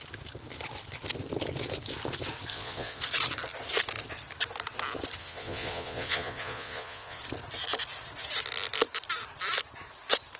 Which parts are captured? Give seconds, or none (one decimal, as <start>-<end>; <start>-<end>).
0.0-2.5; 3.0-5.2; 7.2-10.4